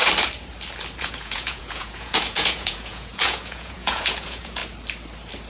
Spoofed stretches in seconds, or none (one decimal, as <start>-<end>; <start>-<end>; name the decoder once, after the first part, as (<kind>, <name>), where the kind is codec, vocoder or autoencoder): 1.0-4.6 (vocoder, Vocos)